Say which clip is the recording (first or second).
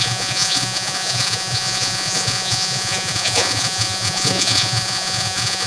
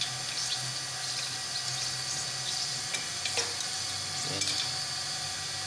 second